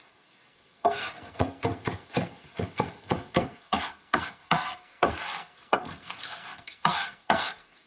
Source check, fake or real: fake